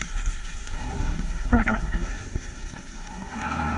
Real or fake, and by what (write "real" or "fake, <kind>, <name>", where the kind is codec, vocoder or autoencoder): fake, codec, SNAC